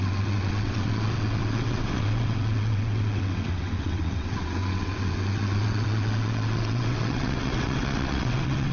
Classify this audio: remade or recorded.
remade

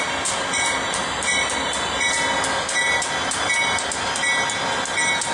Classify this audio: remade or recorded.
recorded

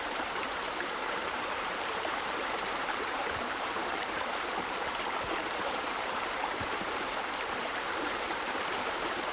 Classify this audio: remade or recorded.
remade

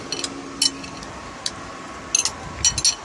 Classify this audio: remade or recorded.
recorded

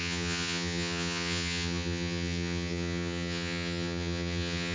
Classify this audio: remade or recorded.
remade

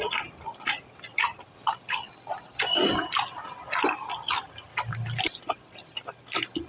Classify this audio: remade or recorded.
recorded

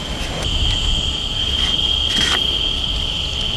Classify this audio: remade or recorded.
remade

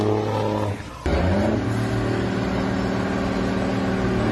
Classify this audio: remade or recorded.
recorded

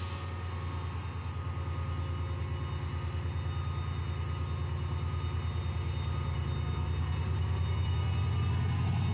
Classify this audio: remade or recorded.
recorded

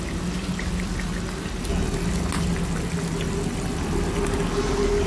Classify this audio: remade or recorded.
recorded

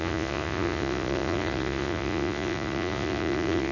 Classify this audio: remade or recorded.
remade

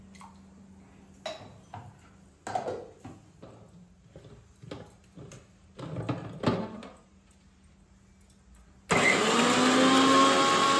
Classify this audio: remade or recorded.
recorded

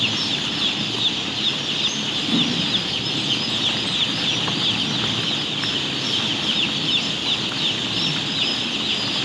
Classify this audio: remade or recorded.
recorded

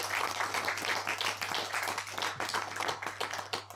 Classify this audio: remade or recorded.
recorded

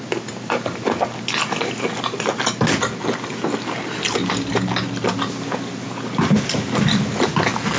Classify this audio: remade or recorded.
recorded